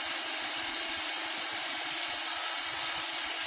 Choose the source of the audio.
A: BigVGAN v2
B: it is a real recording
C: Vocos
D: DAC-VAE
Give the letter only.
A